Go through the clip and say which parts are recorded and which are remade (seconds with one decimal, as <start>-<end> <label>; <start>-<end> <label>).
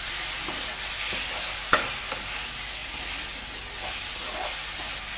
0.0-5.2 recorded